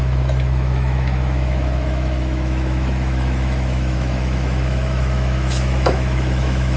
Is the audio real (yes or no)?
no